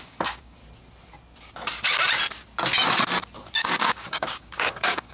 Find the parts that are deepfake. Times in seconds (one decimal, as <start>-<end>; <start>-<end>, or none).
0.0-0.6; 3.6-5.1